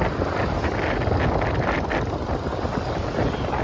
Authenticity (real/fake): real